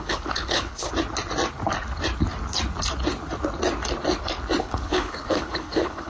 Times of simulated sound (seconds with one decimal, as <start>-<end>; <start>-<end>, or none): 0.0-0.9; 4.6-6.1